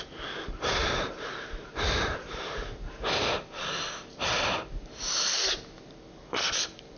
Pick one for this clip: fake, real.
real